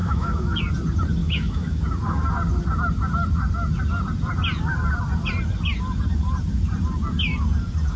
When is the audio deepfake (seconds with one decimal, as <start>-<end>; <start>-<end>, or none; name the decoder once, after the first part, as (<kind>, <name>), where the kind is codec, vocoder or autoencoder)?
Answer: 0.0-0.6 (autoencoder, DAC-VAE); 1.2-1.8